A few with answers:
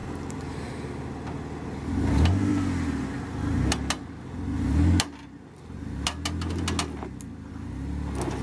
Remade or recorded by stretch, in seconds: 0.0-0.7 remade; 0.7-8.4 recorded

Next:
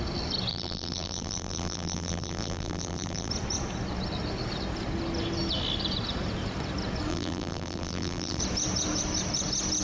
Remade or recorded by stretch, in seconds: 0.0-0.5 recorded; 0.5-3.3 remade; 3.3-7.1 recorded; 7.1-8.4 remade; 8.4-9.8 recorded

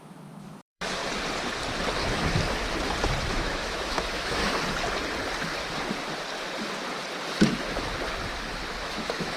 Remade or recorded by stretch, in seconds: 0.0-1.0 remade; 1.0-3.3 recorded; 3.3-4.4 remade; 4.4-8.8 recorded; 8.8-9.4 remade

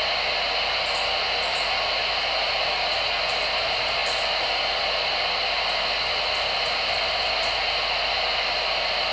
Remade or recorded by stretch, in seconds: 0.0-9.1 recorded

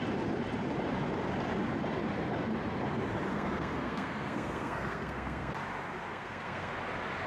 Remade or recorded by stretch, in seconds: 0.0-3.3 recorded; 3.3-5.5 remade; 5.5-6.1 recorded; 6.1-6.7 remade; 6.7-7.3 recorded